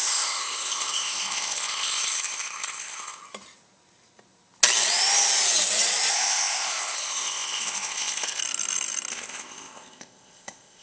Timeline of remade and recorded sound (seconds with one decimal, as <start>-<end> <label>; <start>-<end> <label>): 0.0-3.2 remade; 3.2-6.1 recorded; 6.1-8.4 remade; 8.4-9.1 recorded; 9.1-10.8 remade